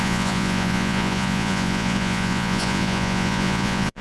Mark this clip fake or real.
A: fake